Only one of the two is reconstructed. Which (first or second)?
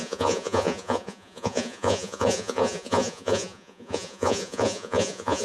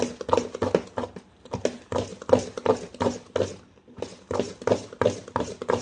first